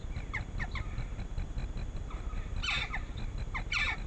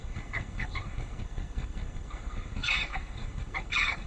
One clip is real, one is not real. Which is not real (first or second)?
second